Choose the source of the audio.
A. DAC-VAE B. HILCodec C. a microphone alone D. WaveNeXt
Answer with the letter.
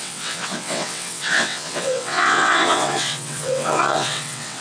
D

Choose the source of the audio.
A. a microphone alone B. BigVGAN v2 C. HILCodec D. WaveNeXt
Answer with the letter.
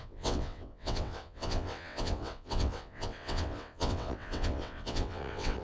D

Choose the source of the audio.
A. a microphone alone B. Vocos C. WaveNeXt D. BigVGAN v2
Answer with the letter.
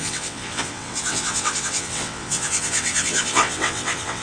C